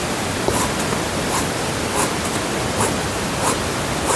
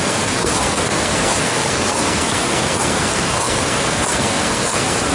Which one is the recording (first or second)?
first